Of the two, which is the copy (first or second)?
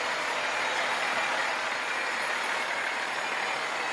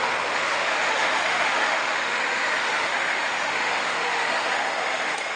second